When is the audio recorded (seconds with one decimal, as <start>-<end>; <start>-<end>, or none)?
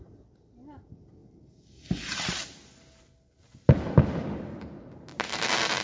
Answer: 0.0-5.8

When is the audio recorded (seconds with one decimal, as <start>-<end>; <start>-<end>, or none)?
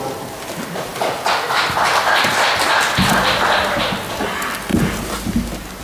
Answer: 0.0-5.8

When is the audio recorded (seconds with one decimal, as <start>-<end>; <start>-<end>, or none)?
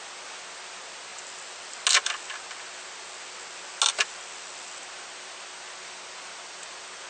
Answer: 0.0-7.1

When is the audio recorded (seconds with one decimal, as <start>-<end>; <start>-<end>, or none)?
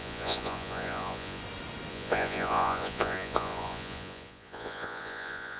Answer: 1.4-1.9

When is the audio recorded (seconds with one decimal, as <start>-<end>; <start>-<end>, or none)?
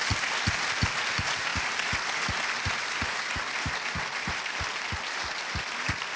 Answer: 0.0-6.2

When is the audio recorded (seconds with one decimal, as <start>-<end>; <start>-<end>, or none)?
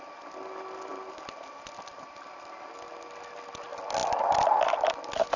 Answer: 0.0-5.4